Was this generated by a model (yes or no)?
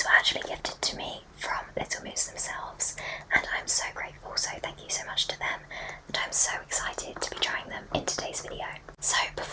no